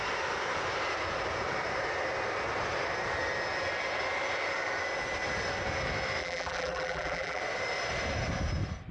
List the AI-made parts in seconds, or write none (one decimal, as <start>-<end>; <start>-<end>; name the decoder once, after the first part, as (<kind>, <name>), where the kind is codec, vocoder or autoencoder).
6.2-7.4 (vocoder, BigVGAN v2)